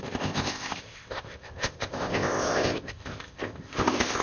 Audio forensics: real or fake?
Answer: fake